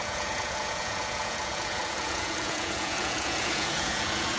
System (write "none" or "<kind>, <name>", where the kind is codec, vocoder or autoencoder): vocoder, Vocos